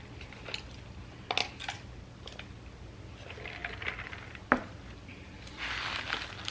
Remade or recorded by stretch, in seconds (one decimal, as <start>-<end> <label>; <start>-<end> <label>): 0.0-6.5 recorded

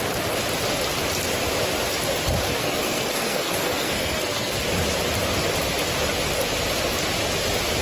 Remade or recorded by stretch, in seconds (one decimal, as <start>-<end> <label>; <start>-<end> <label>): 0.0-2.6 recorded; 2.6-4.6 remade; 4.6-7.8 recorded

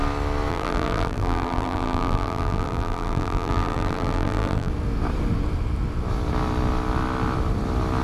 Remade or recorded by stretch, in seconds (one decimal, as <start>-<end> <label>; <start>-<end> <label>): 0.0-0.5 recorded; 0.5-4.7 remade; 4.7-8.0 recorded

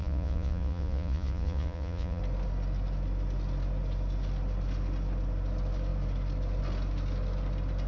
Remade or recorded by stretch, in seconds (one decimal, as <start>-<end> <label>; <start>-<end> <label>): 0.0-2.2 remade; 2.2-7.9 recorded

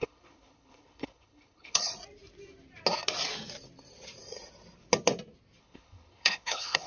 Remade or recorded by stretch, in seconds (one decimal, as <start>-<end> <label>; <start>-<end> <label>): 0.0-1.9 remade; 1.9-5.6 recorded; 5.6-6.9 remade

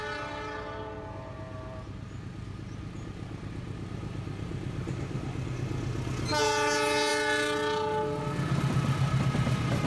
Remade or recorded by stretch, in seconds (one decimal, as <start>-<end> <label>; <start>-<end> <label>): 0.0-9.9 recorded

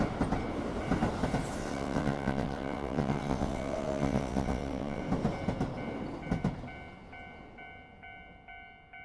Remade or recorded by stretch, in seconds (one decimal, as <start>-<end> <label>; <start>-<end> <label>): 0.0-1.6 recorded; 1.6-5.0 remade; 5.0-9.0 recorded

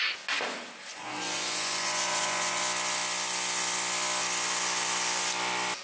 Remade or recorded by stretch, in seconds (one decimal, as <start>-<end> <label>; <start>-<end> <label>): 0.0-0.9 recorded; 0.9-2.6 remade; 2.6-5.8 recorded